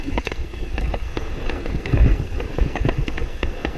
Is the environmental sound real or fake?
fake